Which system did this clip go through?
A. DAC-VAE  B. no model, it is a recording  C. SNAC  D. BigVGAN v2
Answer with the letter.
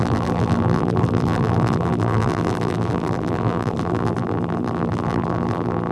D